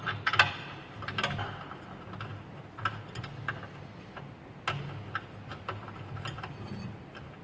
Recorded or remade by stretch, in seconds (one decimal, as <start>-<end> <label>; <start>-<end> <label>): 0.0-7.4 recorded